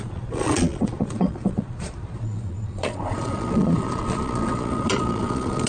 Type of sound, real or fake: fake